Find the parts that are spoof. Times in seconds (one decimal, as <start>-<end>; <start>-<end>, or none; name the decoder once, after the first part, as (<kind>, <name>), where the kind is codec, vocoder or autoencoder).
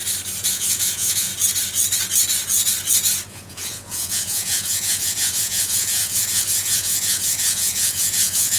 0.5-1.3 (vocoder, Vocos); 3.3-8.6